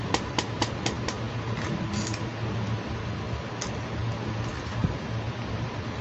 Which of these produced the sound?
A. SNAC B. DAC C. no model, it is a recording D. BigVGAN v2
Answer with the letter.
C